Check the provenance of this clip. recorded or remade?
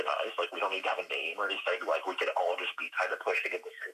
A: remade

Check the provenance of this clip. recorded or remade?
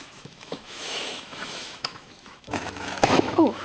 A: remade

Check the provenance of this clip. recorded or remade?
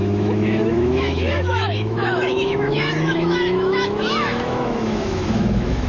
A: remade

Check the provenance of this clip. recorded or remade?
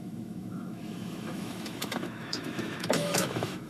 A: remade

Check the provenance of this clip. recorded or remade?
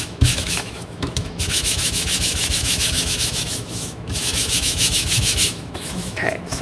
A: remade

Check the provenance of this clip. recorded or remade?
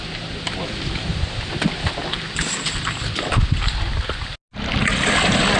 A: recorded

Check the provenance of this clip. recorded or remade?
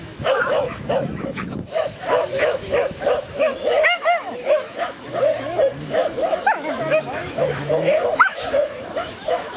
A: remade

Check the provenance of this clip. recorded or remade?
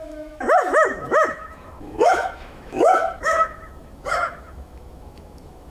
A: remade